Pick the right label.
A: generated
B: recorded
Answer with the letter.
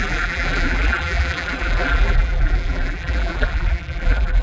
A